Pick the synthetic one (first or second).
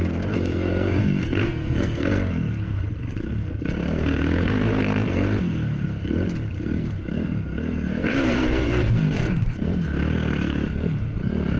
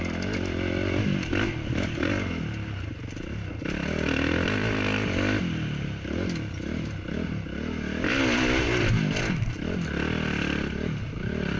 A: first